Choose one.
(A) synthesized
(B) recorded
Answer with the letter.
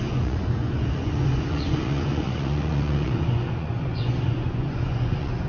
A